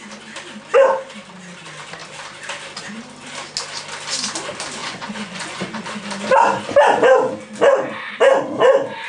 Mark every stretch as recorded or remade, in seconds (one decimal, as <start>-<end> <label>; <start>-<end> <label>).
0.0-4.8 recorded; 4.8-5.8 remade; 5.8-9.1 recorded